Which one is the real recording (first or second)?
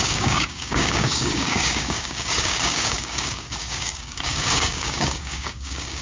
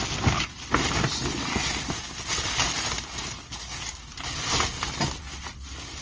second